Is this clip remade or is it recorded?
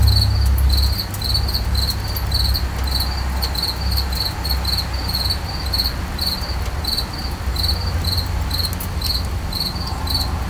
recorded